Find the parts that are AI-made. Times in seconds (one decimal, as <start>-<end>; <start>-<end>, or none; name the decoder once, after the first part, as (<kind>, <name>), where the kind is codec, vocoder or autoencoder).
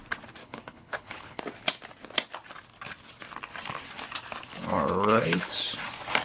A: 0.4-1.4 (codec, HILCodec); 4.5-5.5